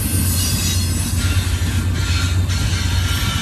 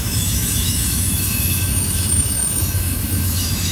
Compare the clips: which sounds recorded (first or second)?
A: first